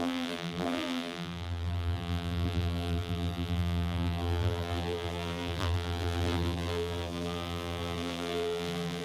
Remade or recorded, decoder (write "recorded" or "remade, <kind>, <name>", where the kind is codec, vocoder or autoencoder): remade, vocoder, BigVGAN v2